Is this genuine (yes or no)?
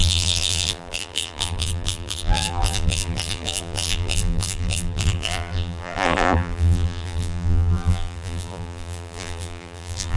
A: no